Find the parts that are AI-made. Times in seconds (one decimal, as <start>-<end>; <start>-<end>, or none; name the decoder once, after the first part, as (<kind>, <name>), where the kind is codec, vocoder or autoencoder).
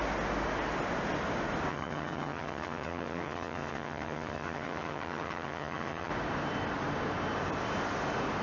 1.7-6.1 (vocoder, HiFi-GAN)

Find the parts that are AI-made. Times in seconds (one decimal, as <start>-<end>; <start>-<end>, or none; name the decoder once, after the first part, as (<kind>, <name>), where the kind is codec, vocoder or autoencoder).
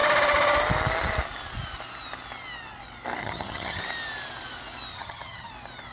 3.2-3.8 (vocoder, HiFi-GAN); 4.9-5.5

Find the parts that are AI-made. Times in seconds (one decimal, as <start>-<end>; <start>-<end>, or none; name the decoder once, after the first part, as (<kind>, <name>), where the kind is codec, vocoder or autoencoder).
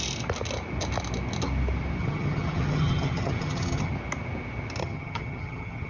2.0-3.9 (vocoder, HiFi-GAN); 4.8-5.9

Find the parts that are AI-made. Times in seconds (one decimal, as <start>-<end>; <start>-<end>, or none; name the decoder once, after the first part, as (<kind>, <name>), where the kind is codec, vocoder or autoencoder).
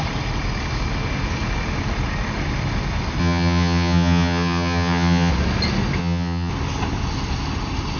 3.2-5.3 (vocoder, HiFi-GAN); 6.0-6.5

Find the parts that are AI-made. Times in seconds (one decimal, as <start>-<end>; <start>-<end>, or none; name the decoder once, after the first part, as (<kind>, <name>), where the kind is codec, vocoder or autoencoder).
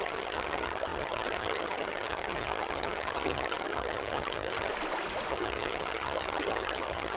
0.0-4.7 (vocoder, HiFi-GAN); 5.3-7.2